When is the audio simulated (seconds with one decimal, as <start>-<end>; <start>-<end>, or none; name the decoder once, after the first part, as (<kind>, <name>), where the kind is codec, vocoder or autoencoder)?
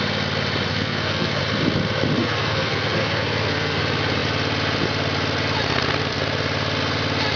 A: 0.7-1.4 (codec, SNAC); 2.2-3.8